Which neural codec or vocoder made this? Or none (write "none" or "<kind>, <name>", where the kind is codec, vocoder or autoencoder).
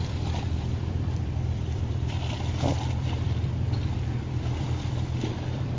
vocoder, BigVGAN v2